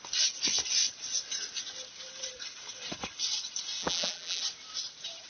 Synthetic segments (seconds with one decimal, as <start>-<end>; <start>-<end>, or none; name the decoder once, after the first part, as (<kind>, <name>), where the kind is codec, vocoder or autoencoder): 3.8-4.4 (vocoder, BigVGAN v2)